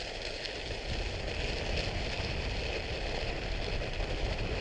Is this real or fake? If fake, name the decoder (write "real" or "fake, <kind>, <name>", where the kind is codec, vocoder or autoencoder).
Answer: real